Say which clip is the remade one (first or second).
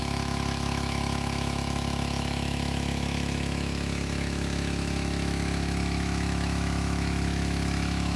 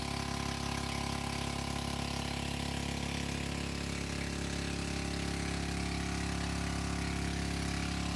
first